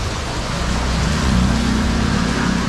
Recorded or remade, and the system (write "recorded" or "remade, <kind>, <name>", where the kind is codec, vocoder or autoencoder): remade, vocoder, Vocos